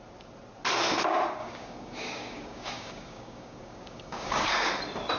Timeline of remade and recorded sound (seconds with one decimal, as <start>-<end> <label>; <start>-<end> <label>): 0.0-1.4 recorded; 1.4-4.5 remade; 4.5-5.2 recorded